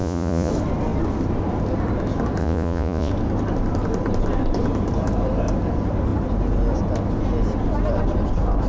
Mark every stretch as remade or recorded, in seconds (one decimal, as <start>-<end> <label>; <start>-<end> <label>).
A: 0.0-0.5 remade; 0.5-2.4 recorded; 2.4-3.1 remade; 3.1-8.7 recorded